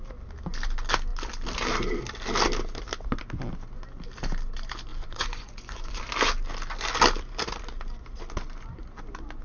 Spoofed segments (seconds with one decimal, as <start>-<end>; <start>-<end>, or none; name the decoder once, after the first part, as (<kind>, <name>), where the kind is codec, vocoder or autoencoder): 4.9-6.0 (vocoder, Vocos)